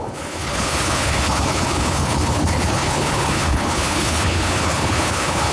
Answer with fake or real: fake